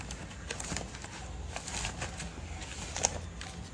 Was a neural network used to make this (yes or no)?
no